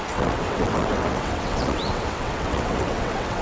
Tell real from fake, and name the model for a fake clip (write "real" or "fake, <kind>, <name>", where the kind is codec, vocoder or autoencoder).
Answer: fake, vocoder, WaveNeXt